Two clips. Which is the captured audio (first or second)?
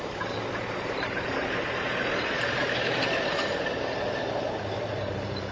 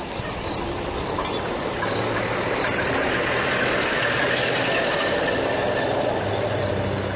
second